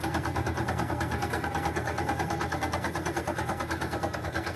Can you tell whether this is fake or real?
fake